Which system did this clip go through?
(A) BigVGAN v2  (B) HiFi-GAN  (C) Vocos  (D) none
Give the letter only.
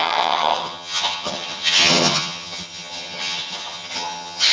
B